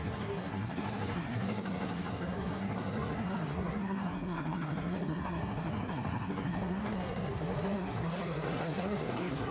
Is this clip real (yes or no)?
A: no